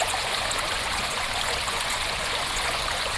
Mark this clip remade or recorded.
remade